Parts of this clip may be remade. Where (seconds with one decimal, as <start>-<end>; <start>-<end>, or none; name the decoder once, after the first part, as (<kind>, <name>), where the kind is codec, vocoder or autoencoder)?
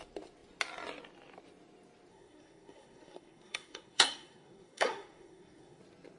2.1-5.8 (codec, SNAC)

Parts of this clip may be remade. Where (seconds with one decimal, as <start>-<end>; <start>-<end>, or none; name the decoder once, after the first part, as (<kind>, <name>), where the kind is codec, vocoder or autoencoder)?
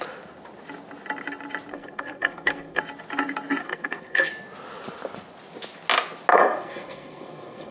1.7-2.8 (codec, SNAC); 3.6-4.3; 6.3-7.7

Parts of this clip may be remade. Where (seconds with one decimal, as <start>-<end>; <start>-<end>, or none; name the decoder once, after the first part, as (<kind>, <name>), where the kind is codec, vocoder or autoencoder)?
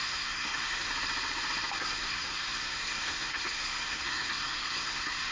0.0-0.9 (codec, SNAC); 1.8-5.3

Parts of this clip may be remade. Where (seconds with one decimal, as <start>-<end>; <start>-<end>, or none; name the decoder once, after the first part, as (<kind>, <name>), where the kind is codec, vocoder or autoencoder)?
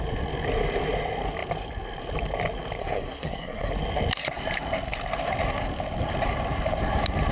2.8-3.7 (codec, SNAC)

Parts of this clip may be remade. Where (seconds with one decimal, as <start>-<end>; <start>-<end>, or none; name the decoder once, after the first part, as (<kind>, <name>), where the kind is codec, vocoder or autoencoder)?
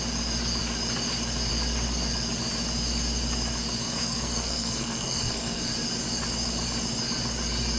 4.0-5.6 (codec, SNAC)